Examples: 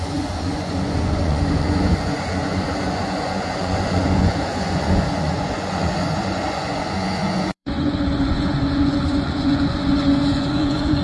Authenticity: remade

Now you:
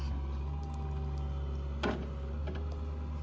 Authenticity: recorded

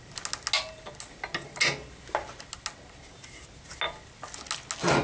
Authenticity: recorded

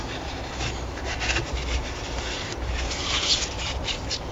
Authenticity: recorded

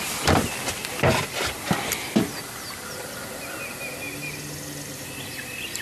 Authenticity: recorded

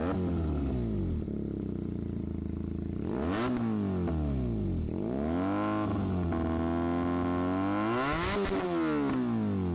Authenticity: recorded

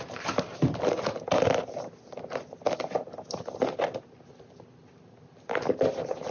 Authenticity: recorded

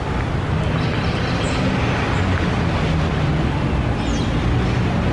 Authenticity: recorded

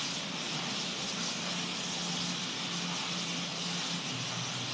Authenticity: recorded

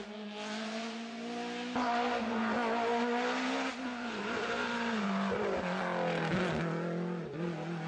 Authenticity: recorded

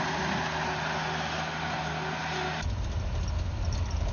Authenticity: recorded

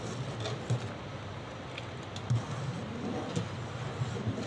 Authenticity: recorded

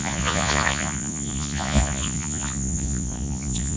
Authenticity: remade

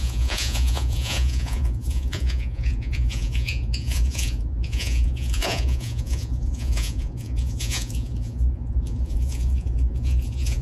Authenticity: remade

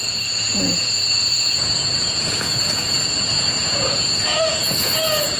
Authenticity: remade